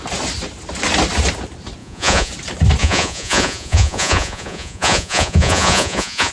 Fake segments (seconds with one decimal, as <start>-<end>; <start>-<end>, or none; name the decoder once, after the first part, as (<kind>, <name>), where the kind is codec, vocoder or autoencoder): 1.8-2.3 (vocoder, Vocos); 2.8-6.3